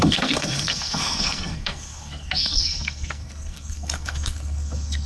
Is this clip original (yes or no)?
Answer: no